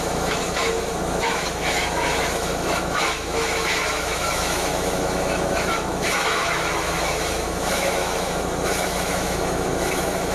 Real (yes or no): no